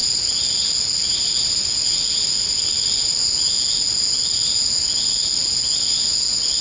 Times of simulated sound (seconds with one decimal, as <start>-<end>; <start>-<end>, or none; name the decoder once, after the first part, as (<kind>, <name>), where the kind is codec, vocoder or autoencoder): none